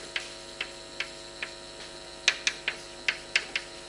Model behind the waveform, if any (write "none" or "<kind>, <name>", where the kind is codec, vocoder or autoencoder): none